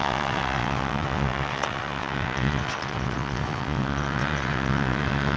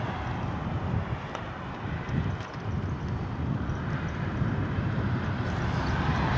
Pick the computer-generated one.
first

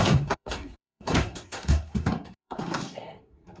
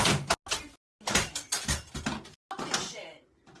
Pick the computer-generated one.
first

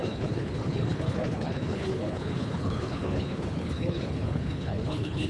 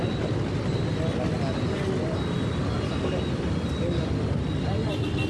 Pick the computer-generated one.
first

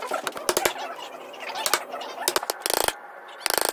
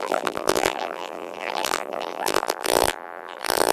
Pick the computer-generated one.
second